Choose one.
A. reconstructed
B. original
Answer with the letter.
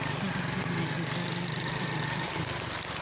B